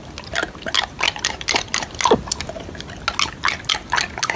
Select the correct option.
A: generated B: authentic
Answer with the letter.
B